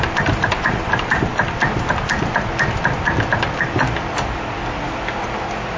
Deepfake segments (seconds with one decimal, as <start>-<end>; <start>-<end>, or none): 0.0-1.3; 4.8-5.8